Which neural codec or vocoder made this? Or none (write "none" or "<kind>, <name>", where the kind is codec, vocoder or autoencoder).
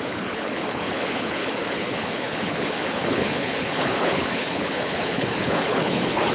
codec, HILCodec